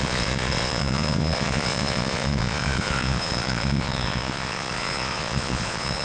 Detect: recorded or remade remade